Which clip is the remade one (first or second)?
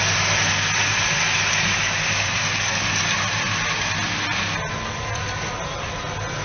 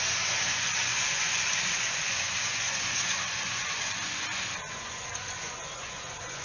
second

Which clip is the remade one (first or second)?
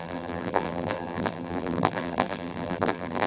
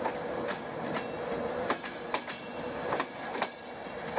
first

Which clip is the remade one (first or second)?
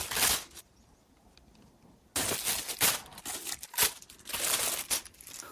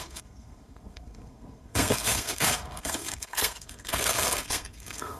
second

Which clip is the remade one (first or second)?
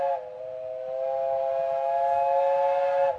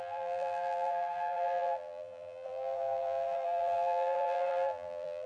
second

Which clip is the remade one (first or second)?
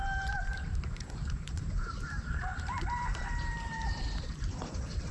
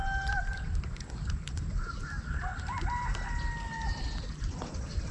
first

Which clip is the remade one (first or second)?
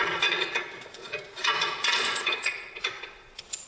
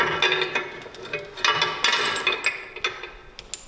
first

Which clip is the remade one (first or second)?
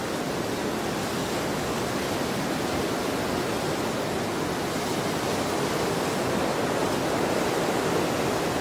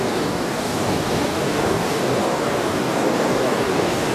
second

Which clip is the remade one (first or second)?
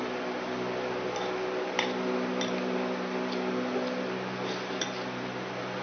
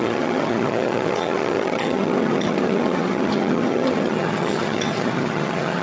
second